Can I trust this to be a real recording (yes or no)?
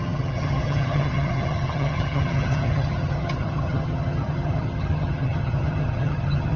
no